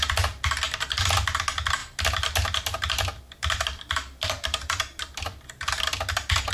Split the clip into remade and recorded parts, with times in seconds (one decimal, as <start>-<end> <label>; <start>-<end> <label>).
0.0-6.5 recorded

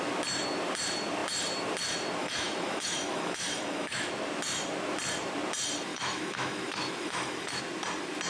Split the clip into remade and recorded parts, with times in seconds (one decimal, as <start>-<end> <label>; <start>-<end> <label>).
0.0-2.2 recorded; 2.2-4.1 remade; 4.1-5.9 recorded; 5.9-7.6 remade; 7.6-8.3 recorded